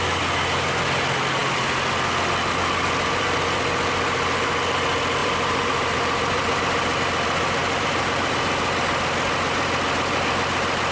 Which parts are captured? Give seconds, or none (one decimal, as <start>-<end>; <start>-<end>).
0.0-5.2; 7.0-7.6; 8.3-10.9